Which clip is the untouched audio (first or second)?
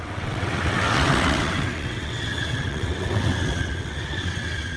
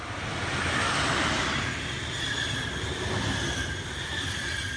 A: second